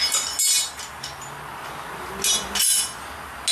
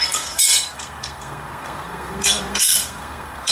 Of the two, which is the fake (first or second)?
second